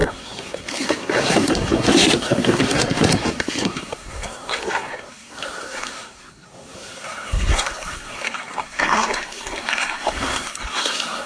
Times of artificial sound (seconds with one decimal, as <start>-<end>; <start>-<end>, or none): 0.0-11.3